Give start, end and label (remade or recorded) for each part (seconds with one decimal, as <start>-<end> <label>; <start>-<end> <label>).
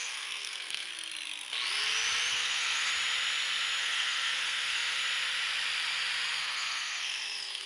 0.0-0.9 remade; 0.9-2.3 recorded; 2.3-2.9 remade; 2.9-3.8 recorded; 3.8-5.0 remade; 5.0-6.4 recorded; 6.4-7.7 remade